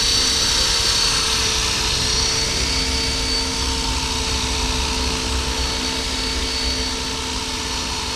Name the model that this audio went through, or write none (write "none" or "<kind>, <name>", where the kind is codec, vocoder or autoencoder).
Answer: none